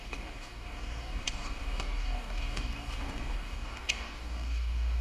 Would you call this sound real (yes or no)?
no